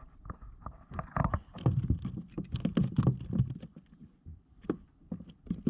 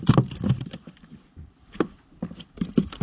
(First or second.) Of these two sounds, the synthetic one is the second